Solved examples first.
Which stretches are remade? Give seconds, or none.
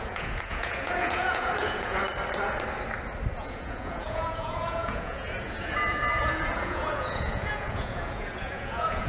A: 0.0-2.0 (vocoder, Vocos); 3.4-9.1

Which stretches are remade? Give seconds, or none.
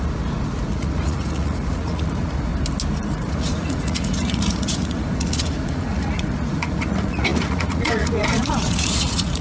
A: 0.0-2.5 (vocoder, Vocos); 3.1-9.4